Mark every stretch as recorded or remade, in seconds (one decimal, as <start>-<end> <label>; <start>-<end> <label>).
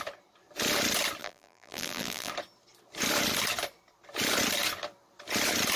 0.0-1.2 recorded; 1.2-2.3 remade; 2.3-5.8 recorded